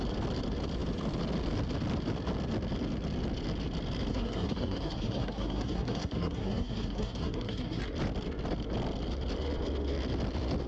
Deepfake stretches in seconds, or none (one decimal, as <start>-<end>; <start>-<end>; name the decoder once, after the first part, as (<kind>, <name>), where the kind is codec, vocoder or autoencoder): 4.1-7.8 (codec, SNAC)